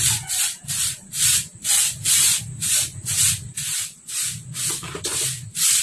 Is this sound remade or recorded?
recorded